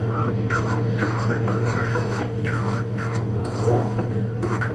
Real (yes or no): no